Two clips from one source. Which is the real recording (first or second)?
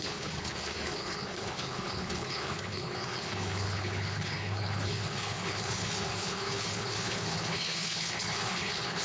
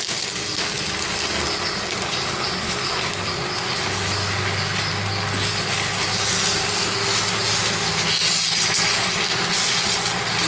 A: second